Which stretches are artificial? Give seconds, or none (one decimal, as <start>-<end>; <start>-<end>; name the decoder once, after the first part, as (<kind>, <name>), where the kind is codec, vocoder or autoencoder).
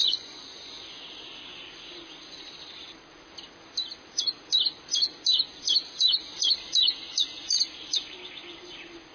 0.0-0.7 (vocoder, Vocos)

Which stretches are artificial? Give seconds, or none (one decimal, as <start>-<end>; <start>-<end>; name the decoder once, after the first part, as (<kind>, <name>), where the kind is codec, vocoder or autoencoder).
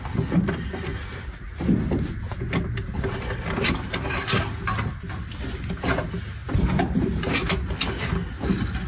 none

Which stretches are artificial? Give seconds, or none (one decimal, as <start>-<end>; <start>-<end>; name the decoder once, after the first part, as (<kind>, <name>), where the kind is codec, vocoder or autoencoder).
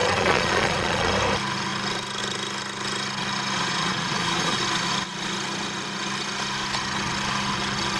0.0-1.1 (vocoder, Vocos); 3.7-4.6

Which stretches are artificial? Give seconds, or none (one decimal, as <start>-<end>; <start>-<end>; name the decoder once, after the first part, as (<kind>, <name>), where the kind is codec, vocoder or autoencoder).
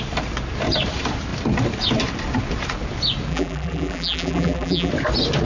3.3-4.9 (vocoder, BigVGAN v2)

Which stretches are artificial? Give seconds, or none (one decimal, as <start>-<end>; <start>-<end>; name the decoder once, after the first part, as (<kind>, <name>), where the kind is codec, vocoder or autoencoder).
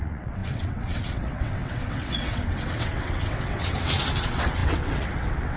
0.0-5.6 (vocoder, WaveNeXt)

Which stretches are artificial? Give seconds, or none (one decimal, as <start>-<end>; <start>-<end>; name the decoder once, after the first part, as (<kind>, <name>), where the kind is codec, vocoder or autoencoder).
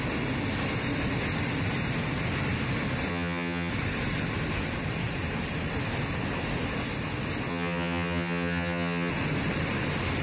3.1-3.7 (vocoder, HiFi-GAN); 7.5-9.1